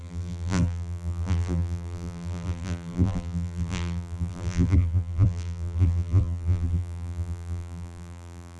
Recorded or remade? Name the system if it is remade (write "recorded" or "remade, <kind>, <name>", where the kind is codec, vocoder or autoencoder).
remade, vocoder, BigVGAN v2